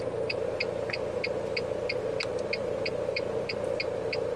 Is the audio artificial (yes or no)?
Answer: no